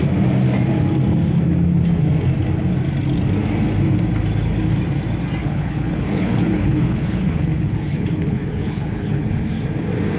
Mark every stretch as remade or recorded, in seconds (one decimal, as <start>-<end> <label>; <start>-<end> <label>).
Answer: 0.0-5.4 recorded; 5.4-9.5 remade; 9.5-10.2 recorded